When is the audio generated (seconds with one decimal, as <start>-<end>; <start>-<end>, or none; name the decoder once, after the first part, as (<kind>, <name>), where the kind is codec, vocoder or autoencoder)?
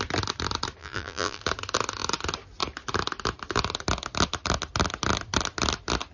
0.8-1.4 (vocoder, BigVGAN v2)